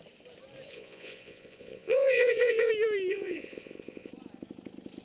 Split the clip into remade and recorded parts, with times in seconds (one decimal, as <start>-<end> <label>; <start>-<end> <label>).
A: 0.0-0.7 recorded; 0.7-2.7 remade; 2.7-3.1 recorded; 3.1-4.1 remade; 4.1-5.0 recorded